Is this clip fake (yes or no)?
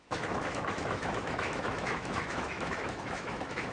yes